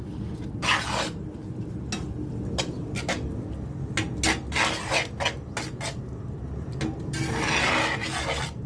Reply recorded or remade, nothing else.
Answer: recorded